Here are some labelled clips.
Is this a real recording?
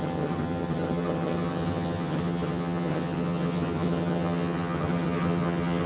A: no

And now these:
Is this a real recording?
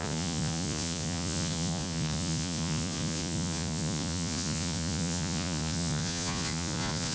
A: no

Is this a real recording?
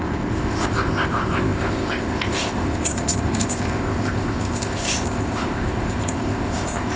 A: no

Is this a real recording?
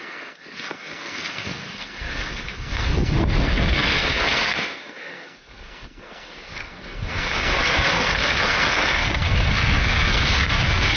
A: no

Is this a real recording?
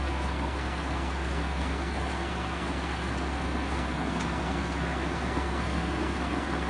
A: no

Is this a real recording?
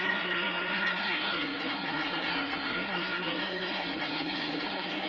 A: no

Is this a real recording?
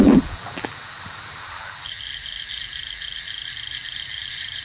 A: no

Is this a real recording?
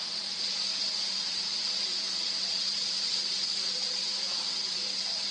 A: no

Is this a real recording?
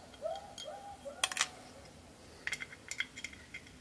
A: yes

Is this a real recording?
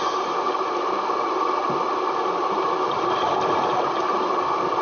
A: yes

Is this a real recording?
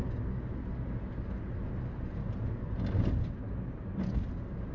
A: yes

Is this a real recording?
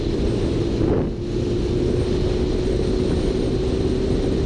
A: yes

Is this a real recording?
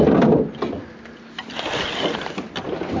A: yes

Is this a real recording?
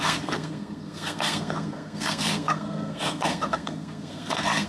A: no